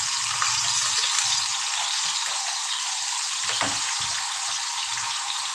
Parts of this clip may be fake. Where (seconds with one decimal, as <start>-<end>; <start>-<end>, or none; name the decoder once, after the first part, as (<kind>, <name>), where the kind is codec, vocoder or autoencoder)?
none

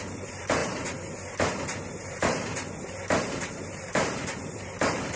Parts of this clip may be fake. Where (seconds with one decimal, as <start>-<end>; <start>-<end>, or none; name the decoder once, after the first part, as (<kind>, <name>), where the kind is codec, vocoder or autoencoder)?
0.0-2.5 (vocoder, BigVGAN v2); 3.2-5.2